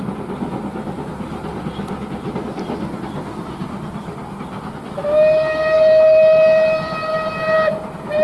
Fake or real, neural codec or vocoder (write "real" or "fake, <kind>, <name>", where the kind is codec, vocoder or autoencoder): real